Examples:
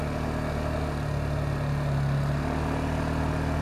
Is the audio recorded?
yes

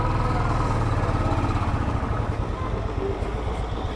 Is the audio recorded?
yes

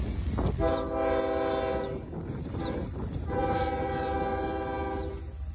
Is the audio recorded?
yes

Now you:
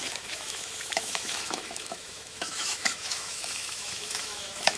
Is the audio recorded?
no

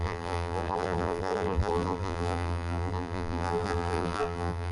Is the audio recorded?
no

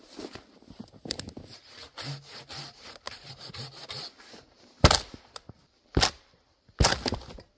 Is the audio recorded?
yes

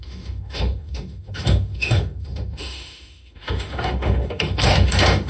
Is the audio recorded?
no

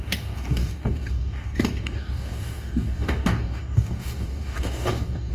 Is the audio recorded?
no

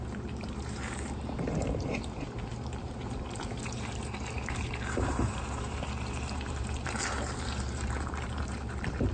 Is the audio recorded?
no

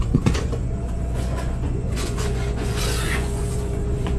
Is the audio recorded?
no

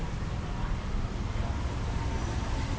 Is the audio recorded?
yes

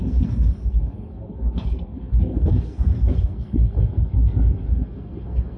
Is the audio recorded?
no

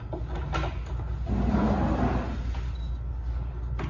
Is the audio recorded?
yes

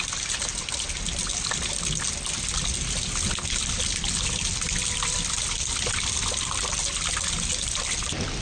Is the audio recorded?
yes